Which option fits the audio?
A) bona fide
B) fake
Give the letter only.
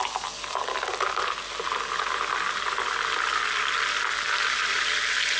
A